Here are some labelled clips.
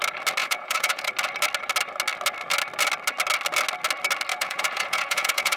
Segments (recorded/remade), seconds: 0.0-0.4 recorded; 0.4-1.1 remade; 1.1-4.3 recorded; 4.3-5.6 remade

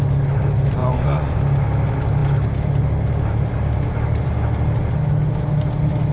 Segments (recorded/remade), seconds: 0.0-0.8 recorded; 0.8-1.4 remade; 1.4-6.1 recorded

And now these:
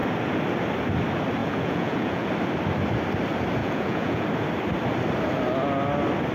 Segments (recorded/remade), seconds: 0.0-1.4 recorded; 1.4-2.3 remade; 2.3-3.6 recorded; 3.6-4.2 remade; 4.2-6.3 recorded

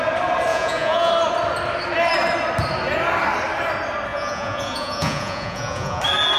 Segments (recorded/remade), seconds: 0.0-0.5 recorded; 0.5-1.1 remade; 1.1-4.1 recorded; 4.1-6.0 remade; 6.0-6.4 recorded

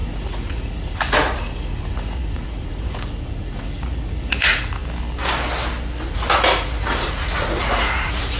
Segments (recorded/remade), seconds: 0.0-4.8 remade; 4.8-6.1 recorded; 6.1-8.4 remade